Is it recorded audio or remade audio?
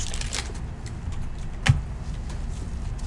recorded